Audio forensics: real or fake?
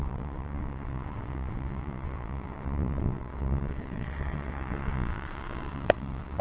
fake